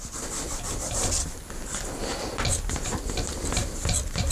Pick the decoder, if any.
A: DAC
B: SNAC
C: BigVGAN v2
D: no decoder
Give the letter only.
C